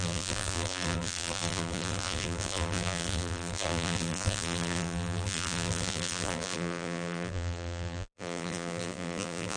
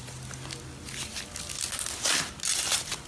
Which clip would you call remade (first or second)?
first